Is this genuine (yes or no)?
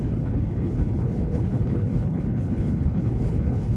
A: no